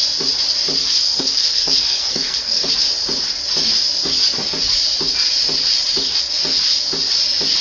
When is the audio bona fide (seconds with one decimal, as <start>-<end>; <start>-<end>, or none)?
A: 0.0-0.8; 2.7-7.6